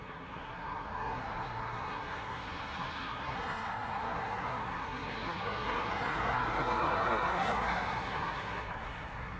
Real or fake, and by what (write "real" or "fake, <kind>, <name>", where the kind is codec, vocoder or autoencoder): fake, codec, SNAC